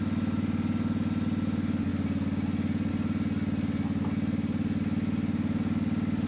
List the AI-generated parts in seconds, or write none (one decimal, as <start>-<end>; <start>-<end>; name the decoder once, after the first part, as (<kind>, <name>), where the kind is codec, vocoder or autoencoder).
none

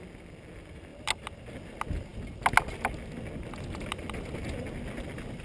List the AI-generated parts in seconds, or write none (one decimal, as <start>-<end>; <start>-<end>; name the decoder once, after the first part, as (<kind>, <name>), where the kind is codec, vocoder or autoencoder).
none